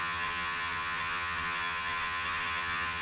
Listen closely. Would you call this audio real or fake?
fake